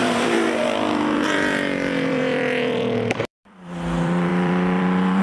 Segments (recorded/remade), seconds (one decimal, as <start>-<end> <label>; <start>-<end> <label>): 0.0-5.2 remade